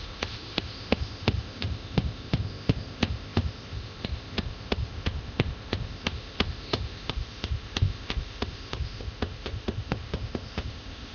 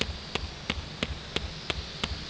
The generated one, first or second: first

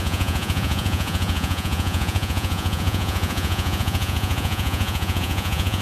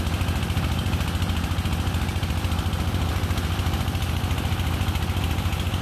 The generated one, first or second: first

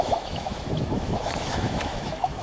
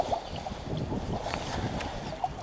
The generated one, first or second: first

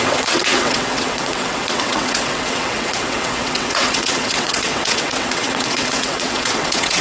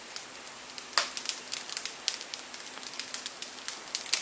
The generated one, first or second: first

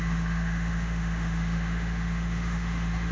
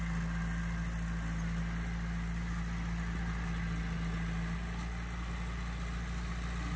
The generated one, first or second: first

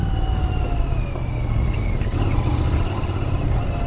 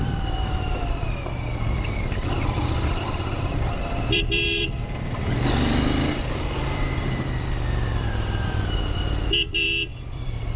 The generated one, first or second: second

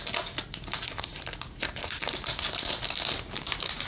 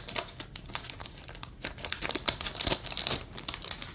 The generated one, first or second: second